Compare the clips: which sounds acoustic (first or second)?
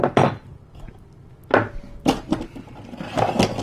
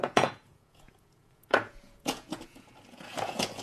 first